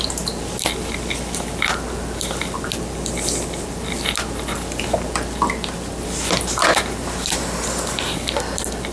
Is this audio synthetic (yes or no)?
no